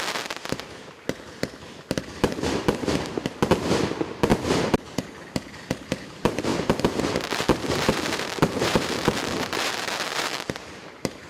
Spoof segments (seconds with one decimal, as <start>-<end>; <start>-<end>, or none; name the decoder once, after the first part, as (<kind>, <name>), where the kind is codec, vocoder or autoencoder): 0.0-0.4 (vocoder, BigVGAN v2); 1.8-4.3; 6.1-6.5; 7.1-11.3